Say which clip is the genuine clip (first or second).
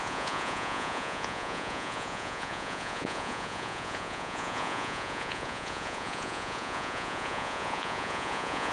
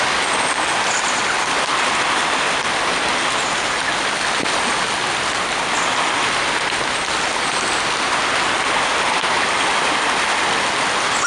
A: second